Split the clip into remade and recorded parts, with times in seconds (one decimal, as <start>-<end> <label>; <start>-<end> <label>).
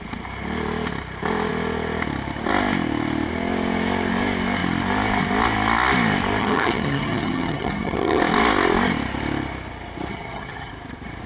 0.0-6.4 recorded; 6.4-8.2 remade; 8.2-10.1 recorded; 10.1-10.7 remade; 10.7-11.3 recorded